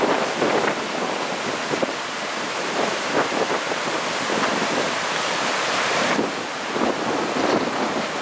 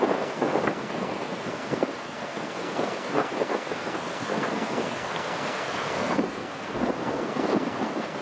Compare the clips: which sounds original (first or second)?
first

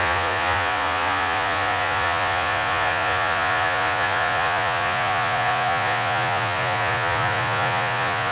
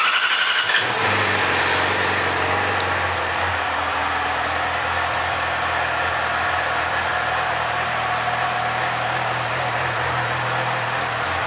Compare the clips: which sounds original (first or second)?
second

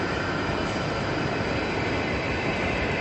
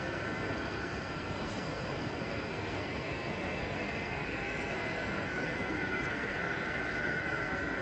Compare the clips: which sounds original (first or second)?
first